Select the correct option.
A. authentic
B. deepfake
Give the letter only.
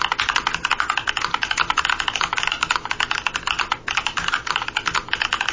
A